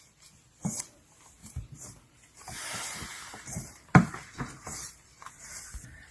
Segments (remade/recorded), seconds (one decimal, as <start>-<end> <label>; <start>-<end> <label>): 0.0-1.4 recorded; 1.4-5.1 remade; 5.1-6.1 recorded